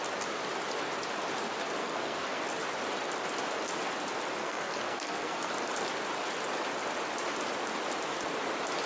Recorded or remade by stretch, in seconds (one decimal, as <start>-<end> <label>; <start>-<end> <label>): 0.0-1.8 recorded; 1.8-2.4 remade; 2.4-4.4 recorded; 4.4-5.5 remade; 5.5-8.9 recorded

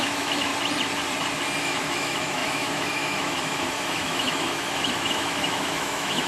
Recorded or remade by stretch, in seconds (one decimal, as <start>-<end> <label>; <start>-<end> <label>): 0.0-0.5 remade; 0.5-1.6 recorded; 1.6-6.3 remade

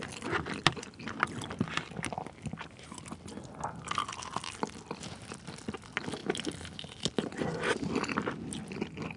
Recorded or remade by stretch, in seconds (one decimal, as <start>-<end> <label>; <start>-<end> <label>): 0.0-9.2 recorded

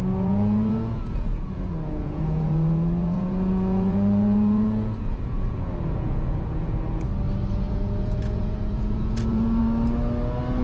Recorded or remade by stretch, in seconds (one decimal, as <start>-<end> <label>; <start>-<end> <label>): 0.0-7.1 remade; 7.1-7.7 recorded; 7.7-9.6 remade; 9.6-10.6 recorded